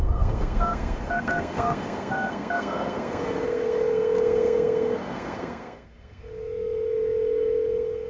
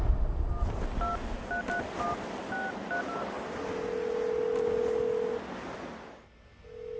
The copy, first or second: first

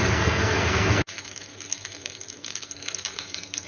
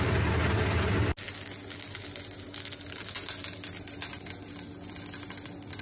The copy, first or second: first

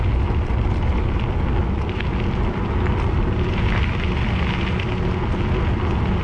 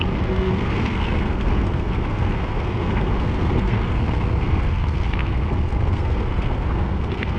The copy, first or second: second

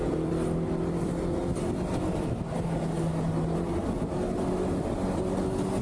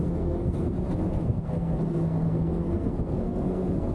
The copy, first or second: second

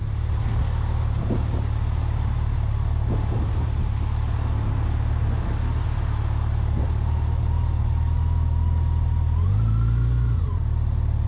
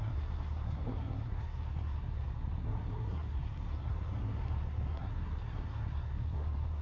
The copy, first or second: second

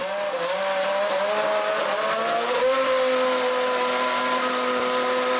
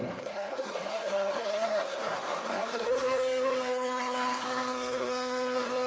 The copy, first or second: second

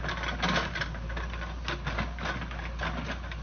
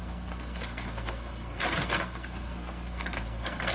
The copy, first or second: second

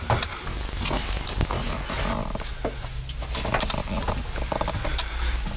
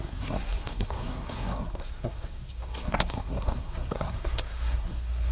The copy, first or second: second